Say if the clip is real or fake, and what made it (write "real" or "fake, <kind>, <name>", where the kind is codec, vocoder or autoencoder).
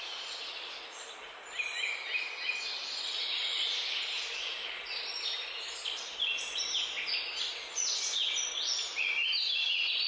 real